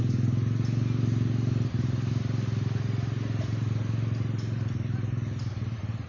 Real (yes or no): yes